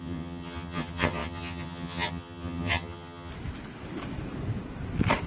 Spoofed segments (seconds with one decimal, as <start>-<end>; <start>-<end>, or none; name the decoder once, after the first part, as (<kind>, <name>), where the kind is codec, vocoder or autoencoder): 0.0-3.3 (vocoder, HiFi-GAN)